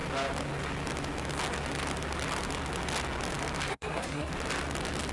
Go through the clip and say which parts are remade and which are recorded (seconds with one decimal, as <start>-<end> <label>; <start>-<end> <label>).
0.0-3.7 recorded; 3.7-4.3 remade; 4.3-5.1 recorded

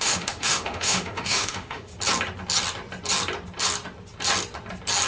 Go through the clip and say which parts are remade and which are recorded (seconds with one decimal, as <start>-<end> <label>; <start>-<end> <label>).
0.0-1.9 remade; 1.9-5.1 recorded

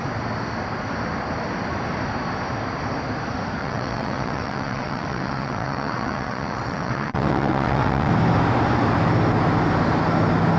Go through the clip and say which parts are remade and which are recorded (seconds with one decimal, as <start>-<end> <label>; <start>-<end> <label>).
0.0-3.6 recorded; 3.6-8.1 remade; 8.1-10.6 recorded

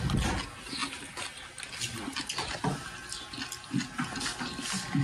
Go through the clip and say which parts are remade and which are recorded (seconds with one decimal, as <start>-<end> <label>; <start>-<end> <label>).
0.0-5.0 recorded